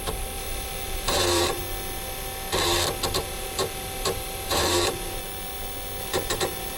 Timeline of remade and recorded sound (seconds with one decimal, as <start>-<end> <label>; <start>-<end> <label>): 0.0-1.6 remade; 1.6-3.2 recorded; 3.2-5.2 remade; 5.2-6.0 recorded; 6.0-6.8 remade